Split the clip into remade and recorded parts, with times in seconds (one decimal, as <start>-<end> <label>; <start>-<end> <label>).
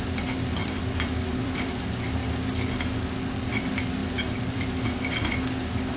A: 0.0-0.6 recorded; 0.6-1.8 remade; 1.8-4.0 recorded; 4.0-4.9 remade; 4.9-6.0 recorded